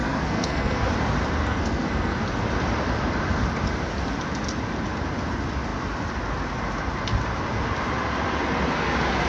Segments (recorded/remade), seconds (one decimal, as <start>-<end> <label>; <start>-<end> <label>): 0.0-0.9 remade; 0.9-1.4 recorded; 1.4-2.2 remade; 2.2-9.3 recorded

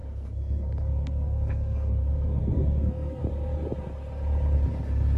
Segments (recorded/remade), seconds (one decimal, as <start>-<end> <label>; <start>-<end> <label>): 0.0-3.2 remade; 3.2-5.2 recorded